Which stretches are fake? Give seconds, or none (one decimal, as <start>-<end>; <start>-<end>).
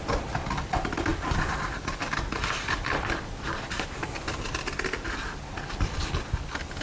none